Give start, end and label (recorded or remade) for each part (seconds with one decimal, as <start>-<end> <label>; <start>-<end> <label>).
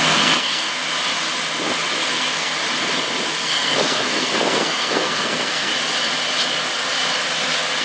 0.0-0.8 remade; 0.8-2.0 recorded; 2.0-2.6 remade; 2.6-3.4 recorded; 3.4-5.7 remade; 5.7-7.8 recorded